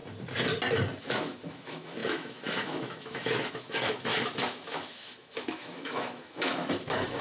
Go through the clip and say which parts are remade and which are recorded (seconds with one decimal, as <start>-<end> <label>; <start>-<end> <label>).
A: 0.0-1.0 recorded; 1.0-7.2 remade